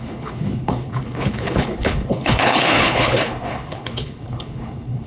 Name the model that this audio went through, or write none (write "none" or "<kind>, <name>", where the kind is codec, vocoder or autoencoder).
codec, HILCodec